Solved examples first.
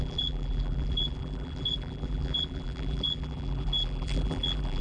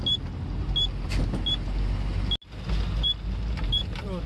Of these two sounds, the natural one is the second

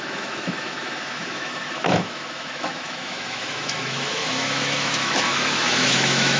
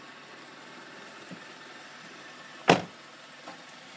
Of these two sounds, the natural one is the second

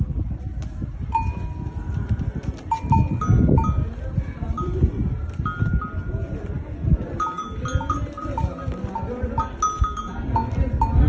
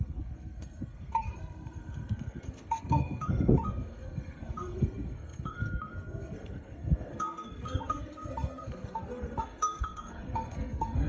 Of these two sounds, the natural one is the first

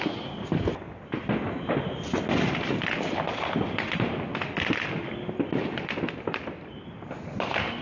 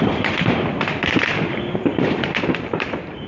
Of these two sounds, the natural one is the first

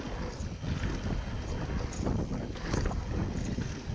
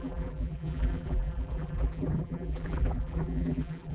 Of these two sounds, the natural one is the first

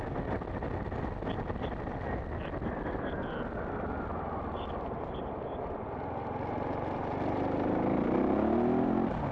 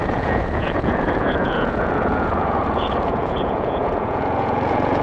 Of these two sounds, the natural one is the first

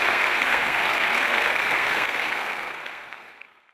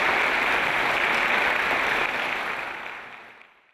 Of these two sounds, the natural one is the second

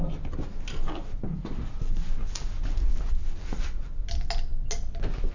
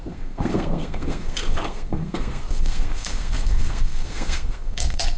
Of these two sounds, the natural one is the first